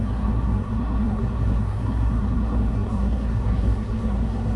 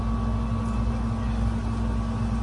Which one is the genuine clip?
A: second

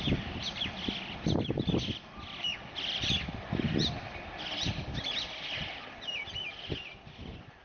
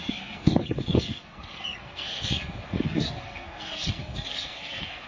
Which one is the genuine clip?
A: first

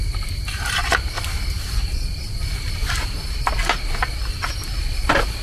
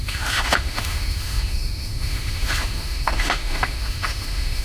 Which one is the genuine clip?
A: first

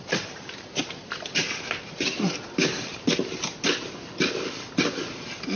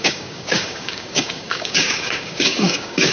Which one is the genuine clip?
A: first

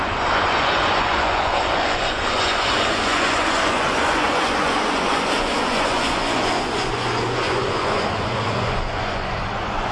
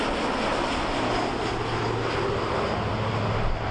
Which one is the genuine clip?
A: second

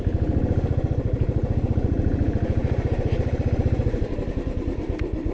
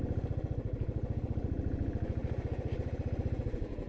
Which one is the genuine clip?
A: second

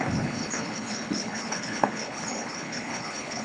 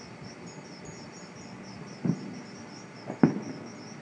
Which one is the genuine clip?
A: second